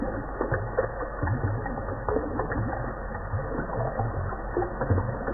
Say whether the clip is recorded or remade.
recorded